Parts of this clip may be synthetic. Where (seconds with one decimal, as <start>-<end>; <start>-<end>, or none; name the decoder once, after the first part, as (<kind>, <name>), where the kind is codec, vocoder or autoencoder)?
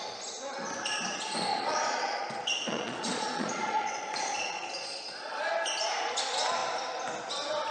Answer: 1.5-5.5 (vocoder, Vocos)